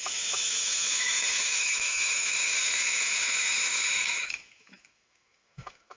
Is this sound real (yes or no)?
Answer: no